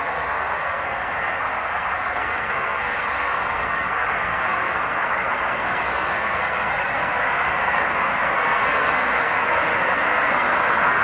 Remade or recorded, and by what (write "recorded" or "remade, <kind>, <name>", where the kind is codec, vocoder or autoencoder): remade, codec, SNAC